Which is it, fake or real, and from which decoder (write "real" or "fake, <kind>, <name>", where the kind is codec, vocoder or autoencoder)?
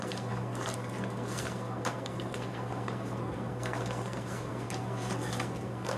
fake, codec, SNAC